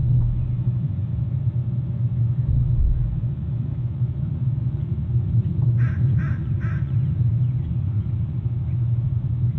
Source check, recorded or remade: remade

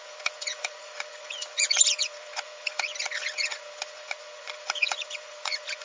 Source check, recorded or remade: remade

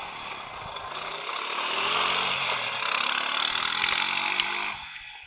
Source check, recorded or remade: recorded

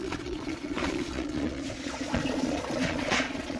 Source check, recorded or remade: remade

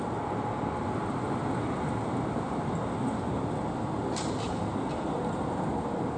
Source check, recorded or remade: recorded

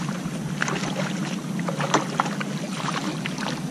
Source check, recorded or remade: recorded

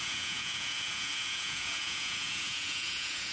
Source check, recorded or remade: remade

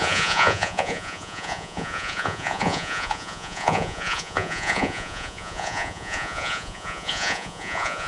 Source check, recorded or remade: remade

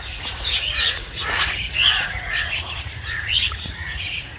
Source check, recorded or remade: remade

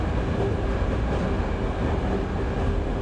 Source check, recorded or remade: recorded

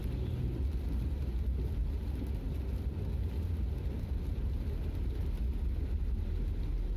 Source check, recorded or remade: recorded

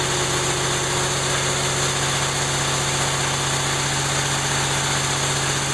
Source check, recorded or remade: recorded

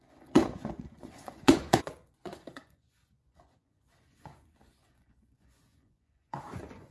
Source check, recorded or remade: remade